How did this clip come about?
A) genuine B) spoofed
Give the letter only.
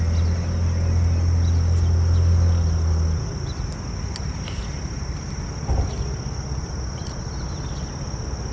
A